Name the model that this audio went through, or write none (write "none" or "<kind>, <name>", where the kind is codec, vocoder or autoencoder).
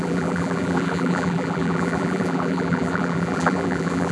vocoder, BigVGAN v2